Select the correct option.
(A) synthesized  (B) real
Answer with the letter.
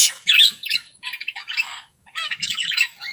A